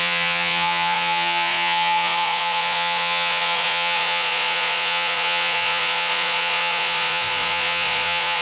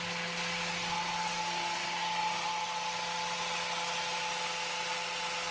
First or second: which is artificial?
first